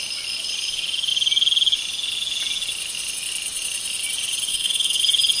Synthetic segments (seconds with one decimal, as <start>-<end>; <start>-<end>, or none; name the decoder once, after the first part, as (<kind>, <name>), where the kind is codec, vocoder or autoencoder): 4.5-5.0 (codec, SNAC)